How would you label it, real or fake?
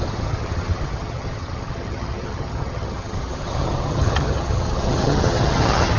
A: fake